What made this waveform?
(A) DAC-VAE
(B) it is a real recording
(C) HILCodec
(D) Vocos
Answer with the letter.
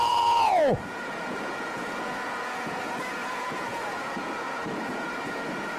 D